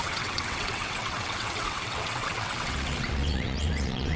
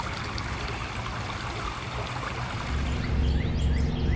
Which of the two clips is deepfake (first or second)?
first